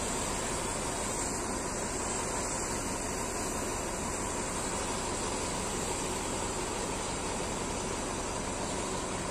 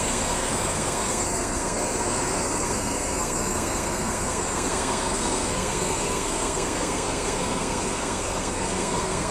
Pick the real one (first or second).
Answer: first